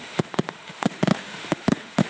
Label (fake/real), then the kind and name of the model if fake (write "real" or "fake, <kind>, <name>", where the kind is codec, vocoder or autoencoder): fake, autoencoder, DAC-VAE